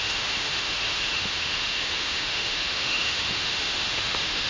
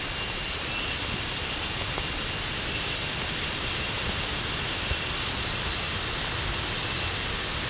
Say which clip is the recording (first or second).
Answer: second